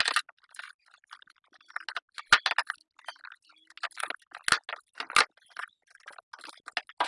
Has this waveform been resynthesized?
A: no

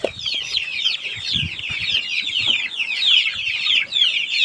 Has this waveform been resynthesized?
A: yes